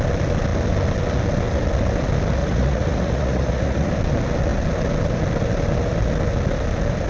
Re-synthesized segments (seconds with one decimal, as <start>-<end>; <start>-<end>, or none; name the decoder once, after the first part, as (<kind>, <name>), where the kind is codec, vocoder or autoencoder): 2.4-3.9 (vocoder, Vocos)